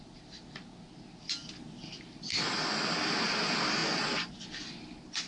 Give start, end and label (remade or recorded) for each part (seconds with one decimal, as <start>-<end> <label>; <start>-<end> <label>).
0.0-5.3 recorded